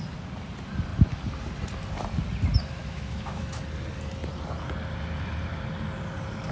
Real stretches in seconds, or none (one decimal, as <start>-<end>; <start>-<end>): 0.0-2.8; 3.6-6.5